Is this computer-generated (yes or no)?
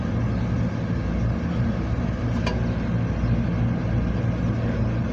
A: no